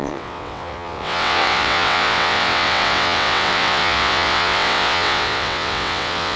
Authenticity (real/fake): fake